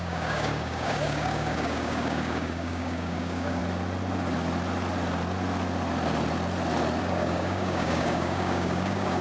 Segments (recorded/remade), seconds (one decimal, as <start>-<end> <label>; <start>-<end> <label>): 0.0-3.6 remade; 3.6-7.0 recorded; 7.0-9.2 remade